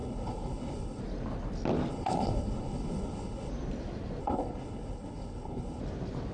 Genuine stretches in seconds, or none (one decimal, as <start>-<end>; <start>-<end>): 1.0-1.9; 3.5-4.2; 5.8-6.3